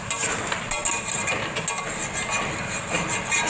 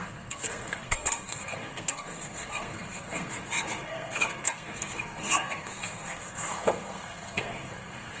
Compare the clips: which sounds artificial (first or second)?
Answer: second